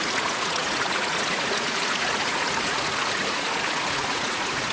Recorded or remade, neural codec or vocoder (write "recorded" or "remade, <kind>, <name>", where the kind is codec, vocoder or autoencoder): remade, vocoder, Vocos